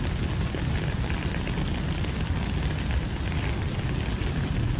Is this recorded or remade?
recorded